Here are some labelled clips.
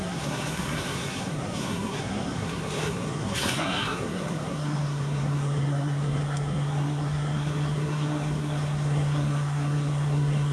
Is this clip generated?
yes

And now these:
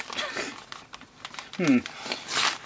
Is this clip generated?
no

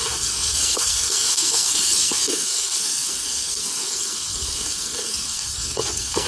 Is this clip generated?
yes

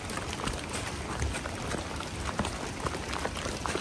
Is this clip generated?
no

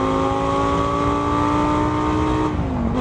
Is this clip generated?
no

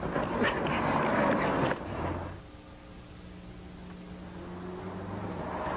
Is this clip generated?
no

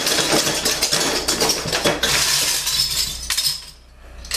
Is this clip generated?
no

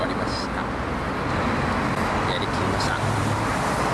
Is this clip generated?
no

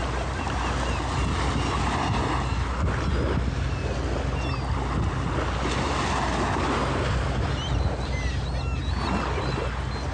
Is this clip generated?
no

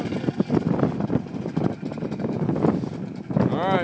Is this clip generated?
no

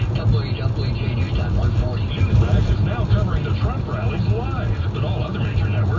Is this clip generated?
no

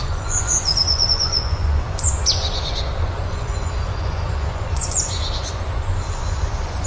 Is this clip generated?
yes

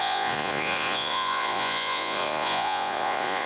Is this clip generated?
yes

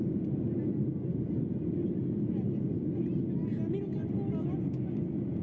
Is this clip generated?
no